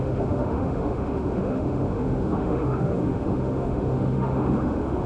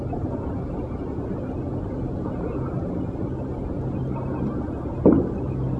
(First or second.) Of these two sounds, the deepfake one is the first